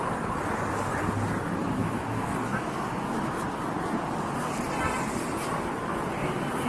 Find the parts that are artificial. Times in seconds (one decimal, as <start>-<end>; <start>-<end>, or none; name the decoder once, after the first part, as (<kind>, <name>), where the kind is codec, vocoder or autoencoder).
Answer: 1.6-3.4 (autoencoder, DAC-VAE)